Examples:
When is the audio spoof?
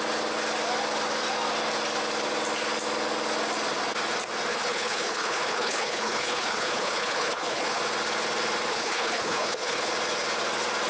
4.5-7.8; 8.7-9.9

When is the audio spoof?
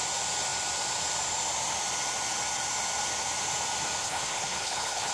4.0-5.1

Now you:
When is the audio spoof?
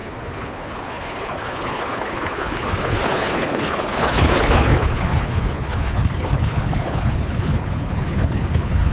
0.0-8.9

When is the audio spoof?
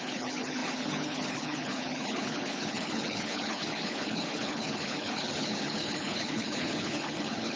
0.0-7.6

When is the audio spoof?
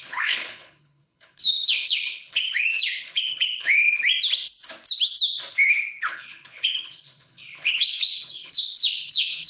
0.0-4.1; 5.5-9.5